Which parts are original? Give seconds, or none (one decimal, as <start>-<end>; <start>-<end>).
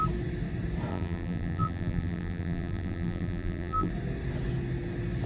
0.0-0.9; 3.9-5.3